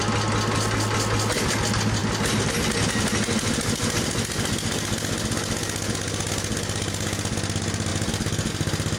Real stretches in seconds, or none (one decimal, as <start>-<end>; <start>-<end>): 0.0-9.0